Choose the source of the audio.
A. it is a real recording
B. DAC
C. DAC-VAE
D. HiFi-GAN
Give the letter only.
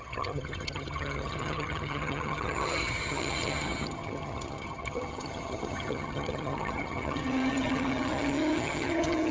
D